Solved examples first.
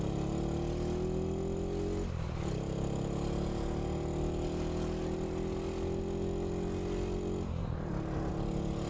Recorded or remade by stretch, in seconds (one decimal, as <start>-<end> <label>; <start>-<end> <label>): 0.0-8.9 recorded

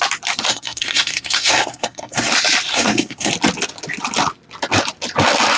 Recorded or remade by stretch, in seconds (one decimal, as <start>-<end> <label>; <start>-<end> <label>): 0.0-0.5 recorded; 0.5-2.3 remade; 2.3-2.7 recorded; 2.7-3.3 remade; 3.3-5.6 recorded

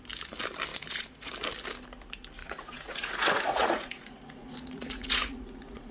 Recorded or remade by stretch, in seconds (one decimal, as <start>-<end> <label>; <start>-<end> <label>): 0.0-0.7 recorded; 0.7-1.3 remade; 1.3-2.4 recorded; 2.4-5.9 remade

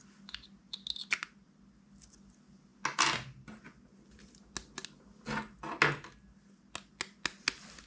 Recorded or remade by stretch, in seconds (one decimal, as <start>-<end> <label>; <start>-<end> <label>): 0.0-7.9 recorded

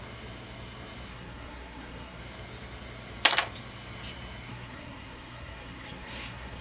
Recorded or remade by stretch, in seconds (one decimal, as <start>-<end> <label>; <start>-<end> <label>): 0.0-1.1 recorded; 1.1-2.2 remade; 2.2-4.5 recorded; 4.5-6.6 remade

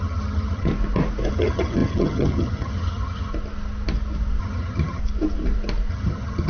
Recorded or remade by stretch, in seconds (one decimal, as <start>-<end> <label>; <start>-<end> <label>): 0.0-0.7 remade; 0.7-1.3 recorded; 1.3-3.3 remade; 3.3-4.4 recorded; 4.4-5.0 remade; 5.0-5.9 recorded; 5.9-6.5 remade